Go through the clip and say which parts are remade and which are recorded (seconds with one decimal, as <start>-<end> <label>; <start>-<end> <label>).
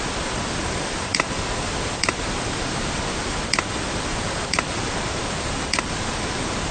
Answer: 0.0-6.7 remade